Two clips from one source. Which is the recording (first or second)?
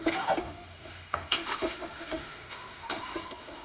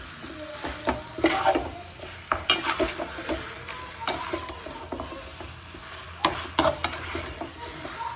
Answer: second